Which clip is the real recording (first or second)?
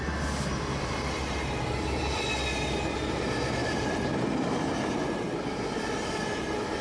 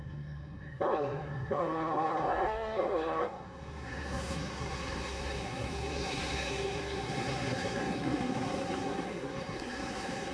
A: first